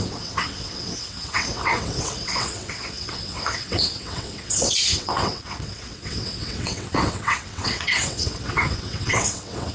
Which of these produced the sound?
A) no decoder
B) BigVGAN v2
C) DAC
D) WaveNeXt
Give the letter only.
D